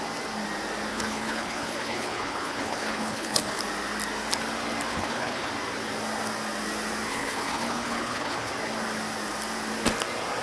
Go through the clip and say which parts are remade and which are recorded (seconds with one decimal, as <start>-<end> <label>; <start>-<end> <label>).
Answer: 0.0-0.9 recorded; 0.9-3.6 remade; 3.6-4.9 recorded; 4.9-5.5 remade; 5.5-7.1 recorded; 7.1-8.5 remade; 8.5-10.4 recorded